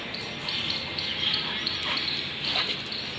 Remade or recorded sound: recorded